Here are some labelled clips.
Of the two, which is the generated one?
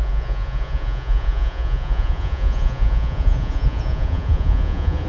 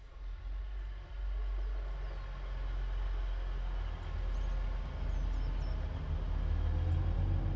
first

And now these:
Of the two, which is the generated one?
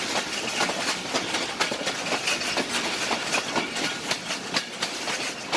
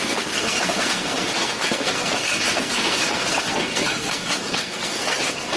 second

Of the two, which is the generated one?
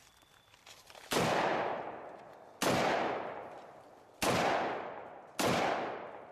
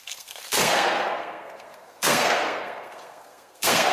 second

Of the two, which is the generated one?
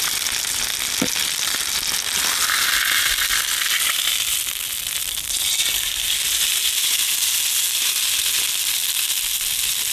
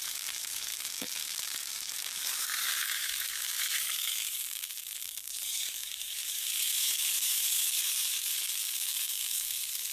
second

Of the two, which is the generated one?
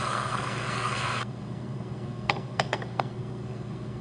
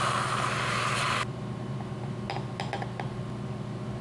first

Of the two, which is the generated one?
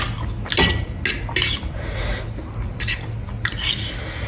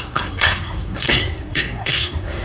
second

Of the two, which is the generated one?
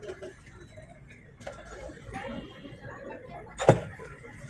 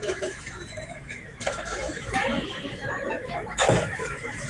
second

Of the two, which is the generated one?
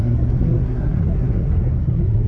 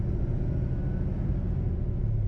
first